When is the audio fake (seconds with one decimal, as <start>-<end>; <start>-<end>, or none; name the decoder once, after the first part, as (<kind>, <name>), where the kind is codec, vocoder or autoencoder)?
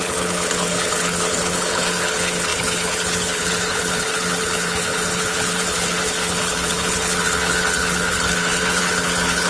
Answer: 0.0-9.5 (codec, HILCodec)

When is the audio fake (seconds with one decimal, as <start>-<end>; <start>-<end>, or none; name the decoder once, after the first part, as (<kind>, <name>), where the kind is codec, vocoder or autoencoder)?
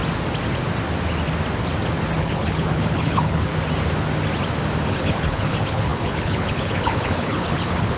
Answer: 2.2-3.5 (codec, HILCodec); 4.9-8.0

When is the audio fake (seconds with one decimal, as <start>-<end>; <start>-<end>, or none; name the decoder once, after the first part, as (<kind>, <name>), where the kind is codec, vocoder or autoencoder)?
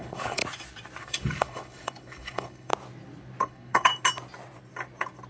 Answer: 0.0-0.4 (codec, HILCodec); 1.0-2.7; 3.4-3.9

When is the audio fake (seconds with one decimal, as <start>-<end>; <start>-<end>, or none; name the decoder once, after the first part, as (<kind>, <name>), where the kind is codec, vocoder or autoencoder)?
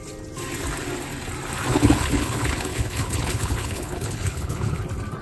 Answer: 1.7-4.8 (codec, HILCodec)